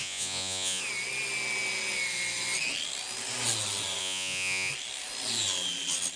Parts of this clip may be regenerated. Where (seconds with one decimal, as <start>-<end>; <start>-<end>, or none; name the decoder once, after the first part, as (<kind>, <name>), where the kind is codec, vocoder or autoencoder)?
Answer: 0.0-0.8 (vocoder, Vocos); 4.0-4.7